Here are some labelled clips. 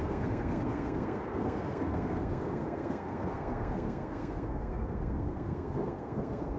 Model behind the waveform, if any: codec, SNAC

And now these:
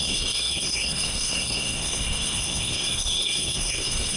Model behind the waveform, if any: codec, SNAC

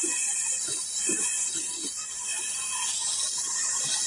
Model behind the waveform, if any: none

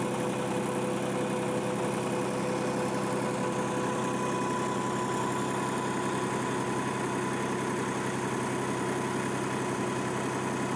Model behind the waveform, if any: none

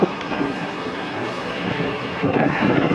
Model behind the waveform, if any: codec, SNAC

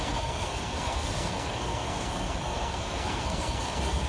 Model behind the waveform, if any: codec, SNAC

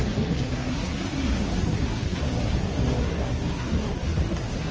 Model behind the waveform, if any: codec, SNAC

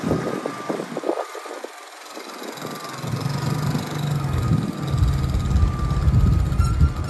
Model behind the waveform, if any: none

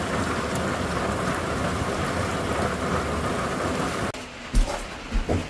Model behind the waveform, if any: none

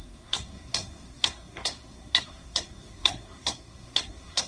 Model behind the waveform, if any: codec, SNAC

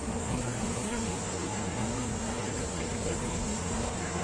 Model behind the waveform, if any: codec, SNAC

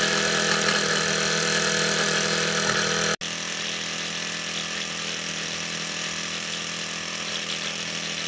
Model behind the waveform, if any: none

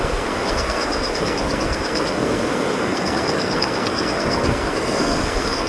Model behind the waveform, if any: codec, SNAC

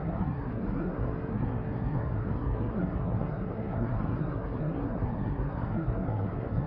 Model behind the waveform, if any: codec, SNAC